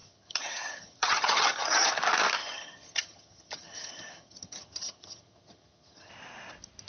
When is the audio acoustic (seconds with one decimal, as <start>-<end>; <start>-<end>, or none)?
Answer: 1.9-2.4; 6.1-6.9